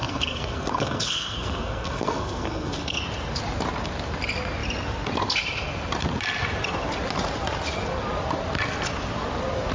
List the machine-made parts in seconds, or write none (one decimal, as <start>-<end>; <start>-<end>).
0.0-3.0